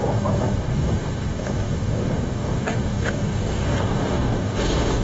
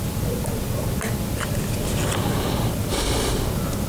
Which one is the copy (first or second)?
first